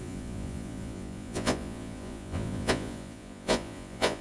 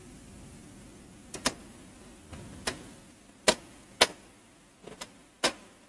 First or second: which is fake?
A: first